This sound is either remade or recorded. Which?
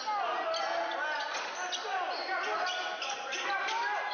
recorded